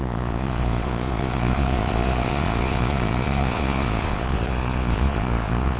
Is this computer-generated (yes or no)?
yes